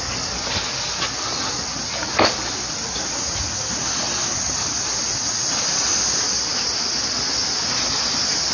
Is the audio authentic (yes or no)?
yes